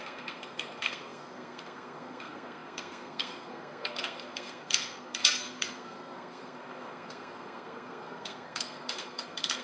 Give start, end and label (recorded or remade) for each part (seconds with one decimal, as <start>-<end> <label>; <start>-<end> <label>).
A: 0.0-9.6 remade